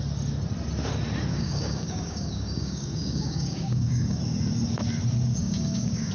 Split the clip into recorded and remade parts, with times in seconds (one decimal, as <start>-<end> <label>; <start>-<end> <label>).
0.0-1.3 recorded; 1.3-4.2 remade; 4.2-5.4 recorded; 5.4-6.1 remade